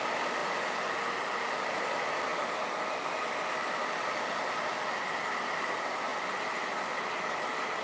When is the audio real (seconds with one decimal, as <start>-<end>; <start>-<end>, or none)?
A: 0.0-7.8